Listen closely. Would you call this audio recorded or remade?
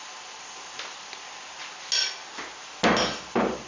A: recorded